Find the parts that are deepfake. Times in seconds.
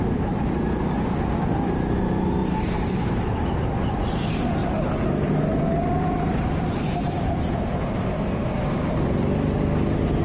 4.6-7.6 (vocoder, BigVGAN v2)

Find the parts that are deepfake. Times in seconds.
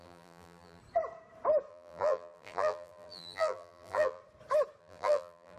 0.0-0.8 (vocoder, BigVGAN v2); 1.7-4.2; 4.8-5.6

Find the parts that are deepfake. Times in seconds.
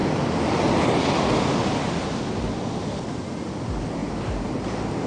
4.0-5.1 (vocoder, BigVGAN v2)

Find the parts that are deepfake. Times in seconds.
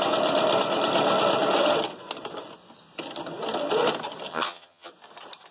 4.3-4.9 (vocoder, HiFi-GAN)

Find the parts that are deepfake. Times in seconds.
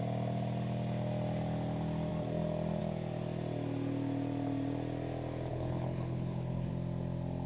5.5-6.7 (codec, HILCodec)